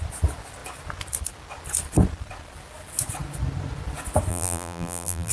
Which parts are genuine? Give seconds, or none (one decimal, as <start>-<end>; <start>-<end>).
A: 0.0-4.3